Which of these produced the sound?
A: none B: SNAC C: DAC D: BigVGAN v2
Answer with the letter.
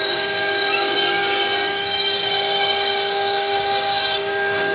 C